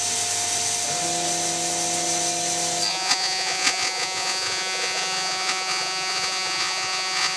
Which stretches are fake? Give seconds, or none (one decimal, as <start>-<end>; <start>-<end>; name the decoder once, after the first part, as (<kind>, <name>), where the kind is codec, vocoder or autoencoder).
2.9-7.4 (vocoder, Vocos)